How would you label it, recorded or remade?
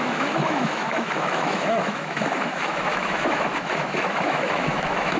remade